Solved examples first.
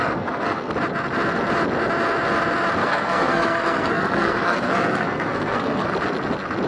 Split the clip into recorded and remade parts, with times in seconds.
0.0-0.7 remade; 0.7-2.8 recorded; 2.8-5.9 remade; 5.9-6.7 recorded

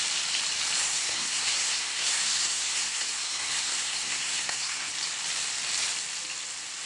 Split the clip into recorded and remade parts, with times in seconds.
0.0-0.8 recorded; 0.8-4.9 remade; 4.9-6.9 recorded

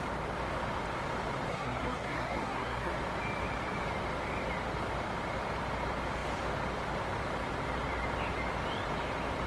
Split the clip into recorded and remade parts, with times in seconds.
0.0-1.5 recorded; 1.5-2.9 remade; 2.9-9.5 recorded

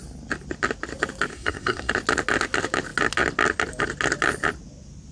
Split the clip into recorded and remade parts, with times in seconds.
0.0-1.3 recorded; 1.3-1.9 remade; 1.9-5.1 recorded

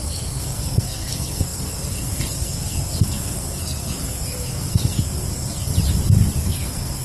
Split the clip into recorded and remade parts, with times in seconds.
0.0-5.7 remade; 5.7-6.4 recorded; 6.4-7.0 remade